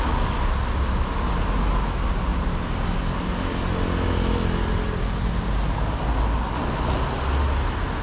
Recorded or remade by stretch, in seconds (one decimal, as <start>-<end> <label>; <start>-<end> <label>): 0.0-8.0 recorded